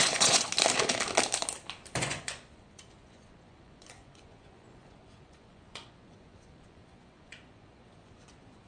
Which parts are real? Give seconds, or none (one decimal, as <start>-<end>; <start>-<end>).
0.5-2.0